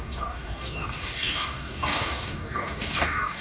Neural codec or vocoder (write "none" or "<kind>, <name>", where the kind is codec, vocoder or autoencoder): codec, DAC